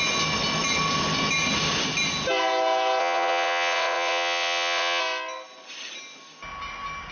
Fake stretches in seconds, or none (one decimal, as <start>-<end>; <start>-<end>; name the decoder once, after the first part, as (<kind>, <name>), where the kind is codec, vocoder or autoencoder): 3.0-5.0 (vocoder, WaveNeXt)

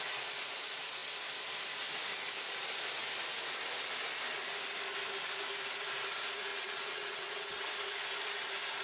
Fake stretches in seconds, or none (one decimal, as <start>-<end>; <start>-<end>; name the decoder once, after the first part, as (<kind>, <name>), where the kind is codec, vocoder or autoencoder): 6.5-7.6 (vocoder, WaveNeXt)